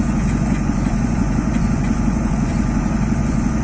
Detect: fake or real fake